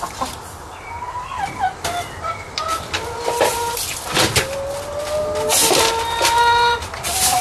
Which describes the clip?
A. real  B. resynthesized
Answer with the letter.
A